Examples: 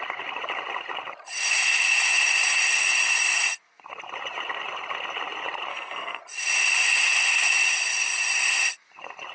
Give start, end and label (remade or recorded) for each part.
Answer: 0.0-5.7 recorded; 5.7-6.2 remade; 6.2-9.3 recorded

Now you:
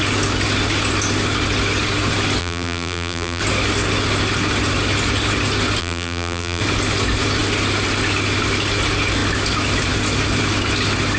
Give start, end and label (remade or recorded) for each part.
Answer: 0.0-2.4 recorded; 2.4-3.4 remade; 3.4-5.8 recorded; 5.8-6.6 remade; 6.6-11.2 recorded

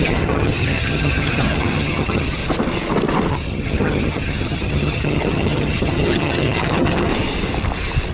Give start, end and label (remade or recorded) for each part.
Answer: 0.0-2.4 remade; 2.4-3.3 recorded; 3.3-7.1 remade; 7.1-8.1 recorded

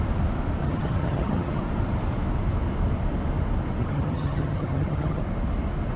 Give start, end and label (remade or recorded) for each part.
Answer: 0.0-0.6 recorded; 0.6-1.6 remade; 1.6-3.8 recorded; 3.8-5.2 remade; 5.2-6.0 recorded